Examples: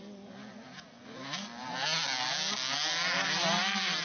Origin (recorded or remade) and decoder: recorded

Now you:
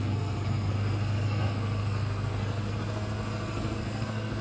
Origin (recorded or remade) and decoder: remade, codec, SNAC